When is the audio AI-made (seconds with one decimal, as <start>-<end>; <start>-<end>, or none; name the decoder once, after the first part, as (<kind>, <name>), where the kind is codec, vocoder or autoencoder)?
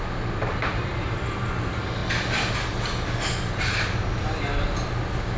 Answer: none